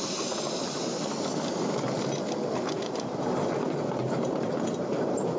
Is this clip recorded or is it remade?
recorded